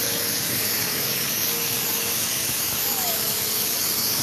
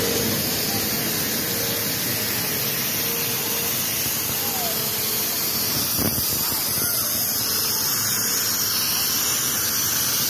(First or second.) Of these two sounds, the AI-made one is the first